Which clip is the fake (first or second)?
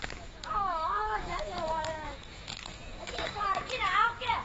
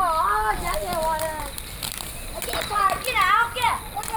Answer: first